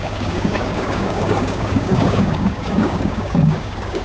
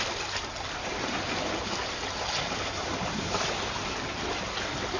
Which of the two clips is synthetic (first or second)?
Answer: first